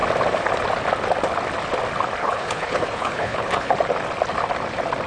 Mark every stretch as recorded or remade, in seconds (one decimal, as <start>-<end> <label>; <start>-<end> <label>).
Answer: 0.0-2.2 recorded; 2.2-3.7 remade; 3.7-5.1 recorded